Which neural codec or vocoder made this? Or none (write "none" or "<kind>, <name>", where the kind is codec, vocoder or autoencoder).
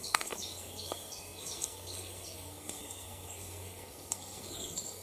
codec, SNAC